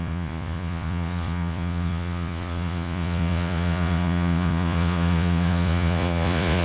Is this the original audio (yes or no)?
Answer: no